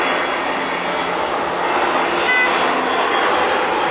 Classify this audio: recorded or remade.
recorded